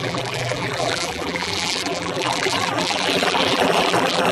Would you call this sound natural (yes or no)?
no